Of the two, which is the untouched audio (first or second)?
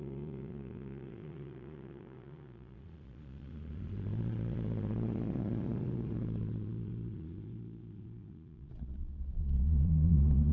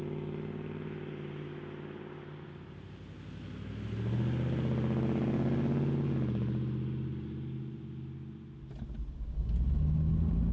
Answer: second